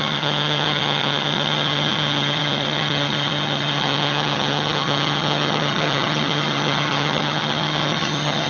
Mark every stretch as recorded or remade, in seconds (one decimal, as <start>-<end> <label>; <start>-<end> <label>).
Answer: 0.0-8.5 remade